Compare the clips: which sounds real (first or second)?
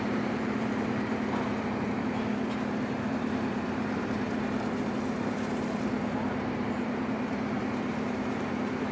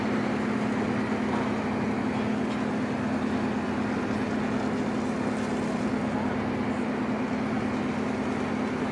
second